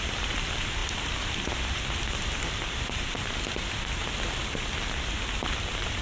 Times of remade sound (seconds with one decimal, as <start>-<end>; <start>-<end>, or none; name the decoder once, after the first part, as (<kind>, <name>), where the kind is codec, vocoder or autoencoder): 0.0-4.4 (vocoder, BigVGAN v2); 5.3-6.0

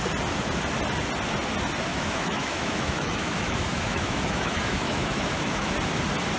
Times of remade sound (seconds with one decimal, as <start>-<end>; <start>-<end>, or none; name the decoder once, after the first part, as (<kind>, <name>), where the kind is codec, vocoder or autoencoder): 1.9-5.7 (autoencoder, DAC-VAE)

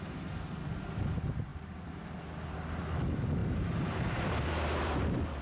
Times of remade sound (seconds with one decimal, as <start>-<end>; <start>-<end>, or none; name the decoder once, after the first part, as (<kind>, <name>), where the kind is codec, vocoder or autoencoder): 1.5-2.2 (vocoder, BigVGAN v2); 3.4-5.4